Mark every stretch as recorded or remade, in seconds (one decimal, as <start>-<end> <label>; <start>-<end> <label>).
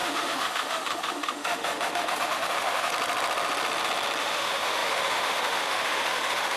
0.0-2.9 remade; 2.9-4.2 recorded; 4.2-6.6 remade